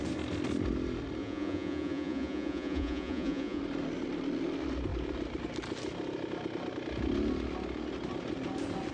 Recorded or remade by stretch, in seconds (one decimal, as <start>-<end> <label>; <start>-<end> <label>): 0.0-1.2 recorded; 1.2-3.6 remade; 3.6-8.9 recorded